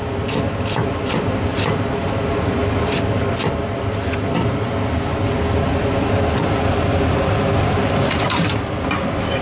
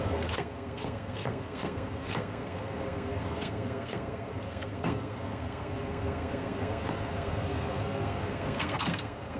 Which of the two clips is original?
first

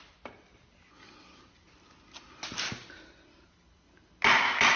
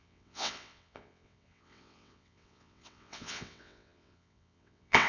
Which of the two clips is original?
first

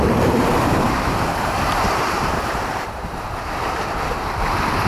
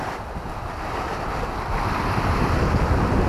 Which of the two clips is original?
second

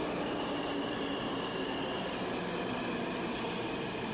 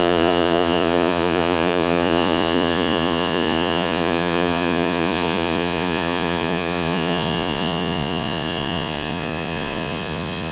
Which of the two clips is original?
first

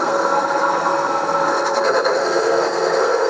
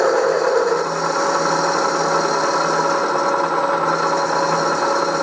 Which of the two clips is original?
second